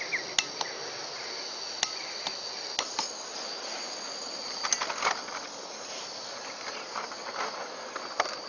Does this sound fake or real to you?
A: real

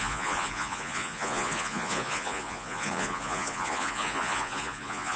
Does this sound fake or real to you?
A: fake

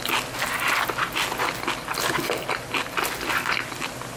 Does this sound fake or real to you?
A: real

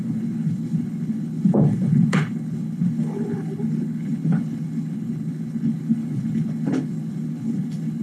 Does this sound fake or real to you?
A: fake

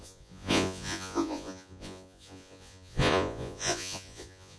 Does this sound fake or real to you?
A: fake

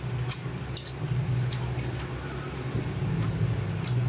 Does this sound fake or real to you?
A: real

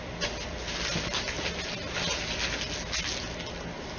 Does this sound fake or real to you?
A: real